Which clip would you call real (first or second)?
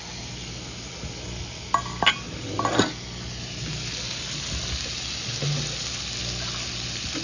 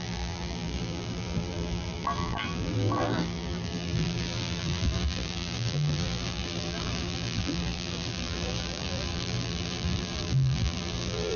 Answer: first